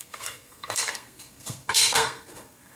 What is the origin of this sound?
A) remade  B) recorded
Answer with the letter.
A